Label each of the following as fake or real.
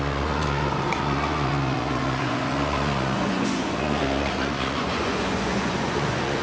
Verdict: fake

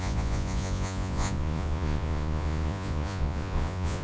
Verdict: fake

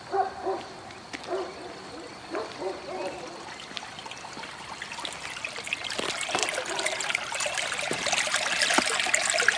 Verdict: real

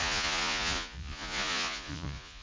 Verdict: fake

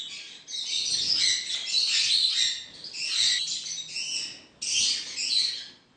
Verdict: real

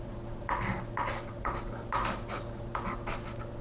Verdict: real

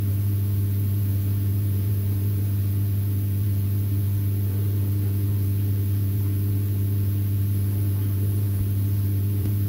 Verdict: fake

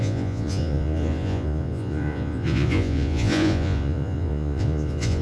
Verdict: fake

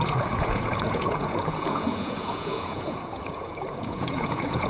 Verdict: fake